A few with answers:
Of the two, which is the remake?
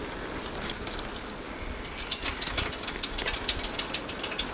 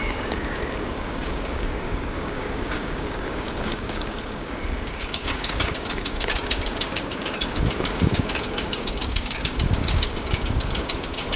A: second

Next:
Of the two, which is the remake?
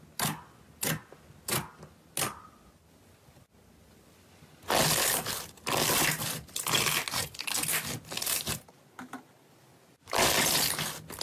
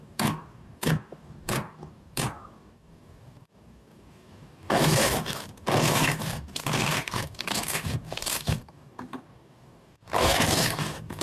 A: second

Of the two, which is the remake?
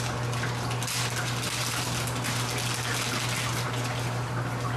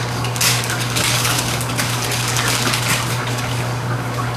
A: second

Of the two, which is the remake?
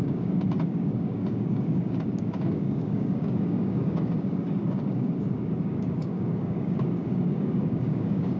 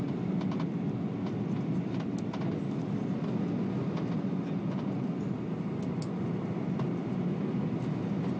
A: first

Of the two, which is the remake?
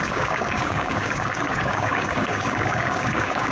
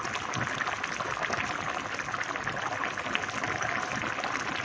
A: first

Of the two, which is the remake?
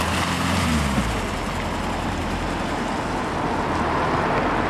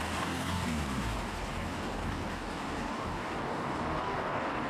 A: second